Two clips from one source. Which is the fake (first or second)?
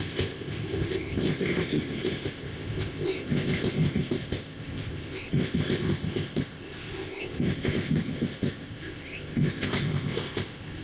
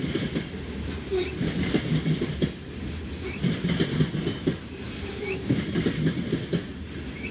first